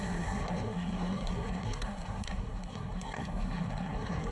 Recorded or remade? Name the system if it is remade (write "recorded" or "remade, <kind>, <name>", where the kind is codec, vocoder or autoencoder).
remade, codec, SNAC